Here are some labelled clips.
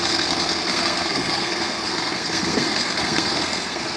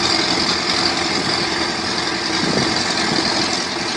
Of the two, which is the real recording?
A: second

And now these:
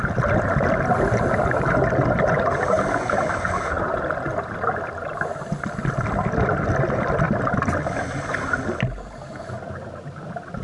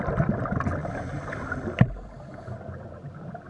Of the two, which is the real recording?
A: first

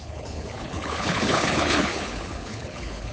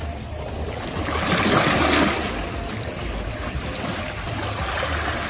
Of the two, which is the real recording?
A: second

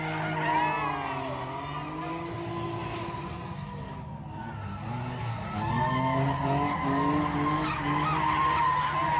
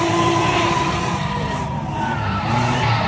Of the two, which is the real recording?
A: first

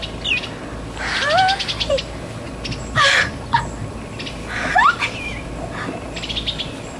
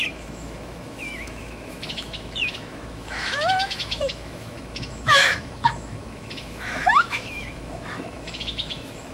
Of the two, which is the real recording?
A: first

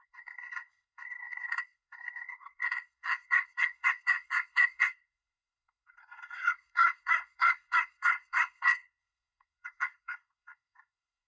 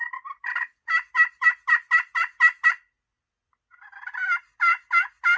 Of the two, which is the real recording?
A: second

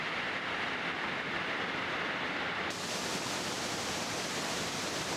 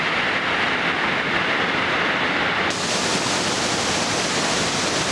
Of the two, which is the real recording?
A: second